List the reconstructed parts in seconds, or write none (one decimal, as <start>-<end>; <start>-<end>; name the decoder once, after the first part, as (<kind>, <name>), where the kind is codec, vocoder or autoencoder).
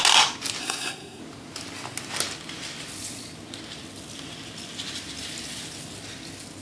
0.6-1.2 (codec, SNAC)